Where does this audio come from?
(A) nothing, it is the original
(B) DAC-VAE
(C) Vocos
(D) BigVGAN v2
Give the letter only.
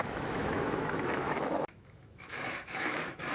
B